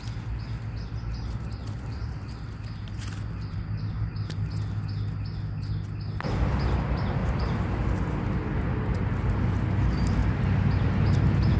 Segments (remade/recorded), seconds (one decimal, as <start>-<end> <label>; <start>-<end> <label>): 0.0-1.6 recorded; 1.6-4.4 remade; 4.4-7.2 recorded; 7.2-7.9 remade; 7.9-10.2 recorded; 10.2-10.9 remade; 10.9-11.6 recorded